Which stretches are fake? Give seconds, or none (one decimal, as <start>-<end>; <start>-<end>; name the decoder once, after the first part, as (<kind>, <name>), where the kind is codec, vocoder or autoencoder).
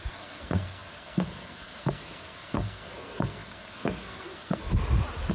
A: 0.0-4.7 (codec, SNAC)